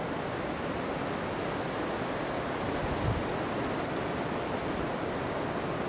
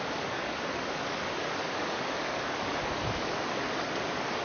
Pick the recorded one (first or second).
first